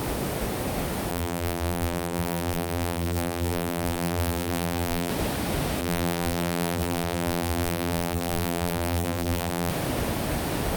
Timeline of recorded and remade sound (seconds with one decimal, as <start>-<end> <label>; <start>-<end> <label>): 0.0-1.1 recorded; 1.1-5.1 remade; 5.1-5.8 recorded; 5.8-9.7 remade; 9.7-10.8 recorded